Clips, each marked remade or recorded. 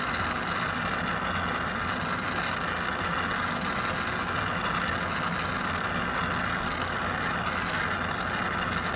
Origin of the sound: recorded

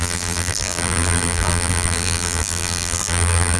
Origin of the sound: remade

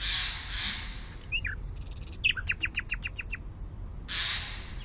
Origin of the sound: recorded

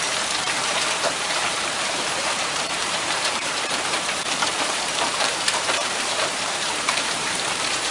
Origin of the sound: remade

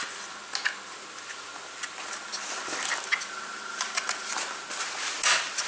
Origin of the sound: recorded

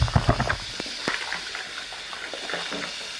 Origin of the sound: recorded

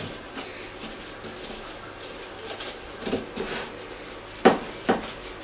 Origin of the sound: recorded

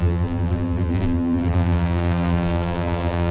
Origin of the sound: remade